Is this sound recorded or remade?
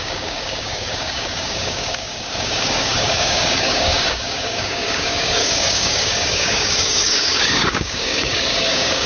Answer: remade